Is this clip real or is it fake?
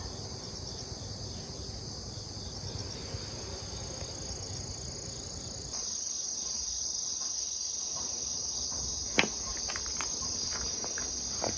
real